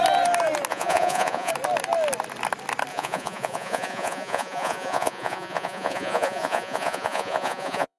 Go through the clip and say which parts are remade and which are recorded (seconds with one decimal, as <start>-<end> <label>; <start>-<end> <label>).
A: 0.0-0.7 recorded; 0.7-1.5 remade; 1.5-2.9 recorded; 2.9-8.0 remade